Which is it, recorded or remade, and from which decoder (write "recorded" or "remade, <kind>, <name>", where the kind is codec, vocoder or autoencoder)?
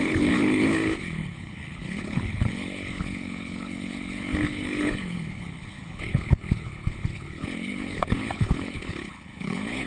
remade, codec, HILCodec